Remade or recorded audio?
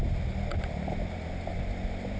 recorded